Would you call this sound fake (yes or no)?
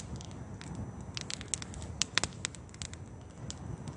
no